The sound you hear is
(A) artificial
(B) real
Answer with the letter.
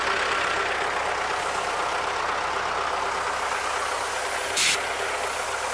B